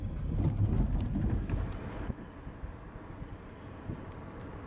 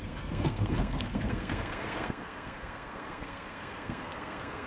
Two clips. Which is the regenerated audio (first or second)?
second